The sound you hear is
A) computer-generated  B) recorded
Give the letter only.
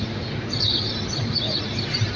B